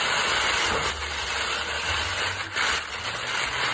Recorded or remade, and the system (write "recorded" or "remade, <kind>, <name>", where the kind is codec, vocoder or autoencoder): recorded